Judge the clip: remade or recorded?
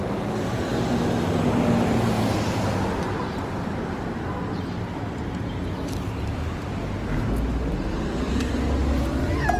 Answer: recorded